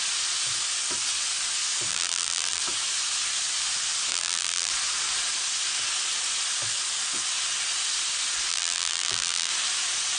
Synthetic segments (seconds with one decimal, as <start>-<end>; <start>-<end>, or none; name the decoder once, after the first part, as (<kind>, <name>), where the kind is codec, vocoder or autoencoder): 1.9-2.6 (vocoder, BigVGAN v2); 4.1-4.7; 8.5-9.5